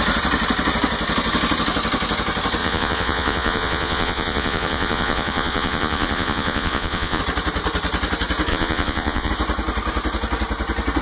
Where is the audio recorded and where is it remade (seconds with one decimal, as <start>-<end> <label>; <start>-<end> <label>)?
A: 0.0-2.6 recorded; 2.6-7.2 remade; 7.2-8.5 recorded; 8.5-9.3 remade; 9.3-11.0 recorded

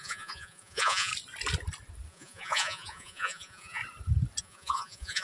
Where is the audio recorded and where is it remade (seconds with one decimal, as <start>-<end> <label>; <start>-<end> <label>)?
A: 0.0-1.1 remade; 1.1-2.1 recorded; 2.1-3.8 remade; 3.8-4.4 recorded; 4.4-5.2 remade

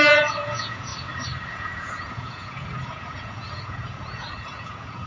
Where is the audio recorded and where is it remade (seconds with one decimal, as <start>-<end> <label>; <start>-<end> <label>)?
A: 0.0-0.9 remade; 0.9-1.5 recorded; 1.5-5.1 remade